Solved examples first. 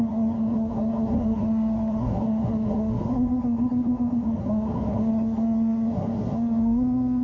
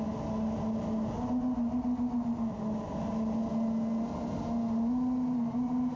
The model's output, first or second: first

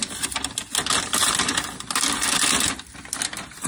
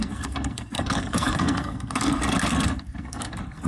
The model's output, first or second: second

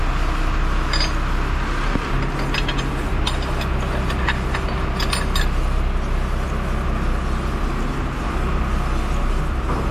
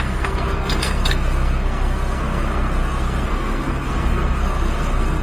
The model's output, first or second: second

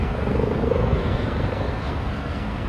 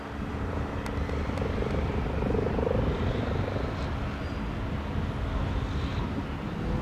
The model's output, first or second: first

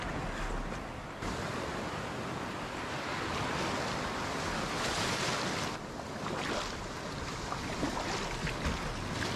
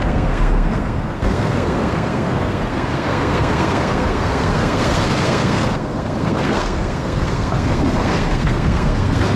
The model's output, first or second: second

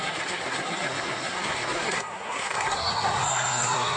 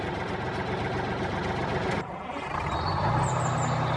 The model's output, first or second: first